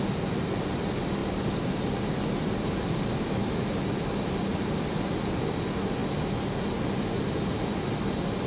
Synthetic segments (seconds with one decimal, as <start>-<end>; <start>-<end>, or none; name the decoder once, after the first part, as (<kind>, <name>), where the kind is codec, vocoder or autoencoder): none